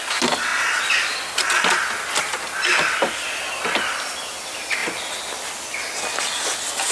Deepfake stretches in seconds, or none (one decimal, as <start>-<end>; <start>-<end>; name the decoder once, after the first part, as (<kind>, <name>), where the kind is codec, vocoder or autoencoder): none

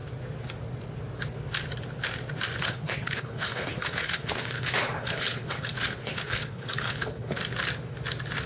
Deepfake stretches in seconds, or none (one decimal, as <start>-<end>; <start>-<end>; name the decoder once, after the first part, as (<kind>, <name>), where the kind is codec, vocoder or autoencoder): 2.6-7.4 (codec, HILCodec)